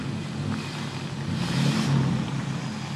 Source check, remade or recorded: recorded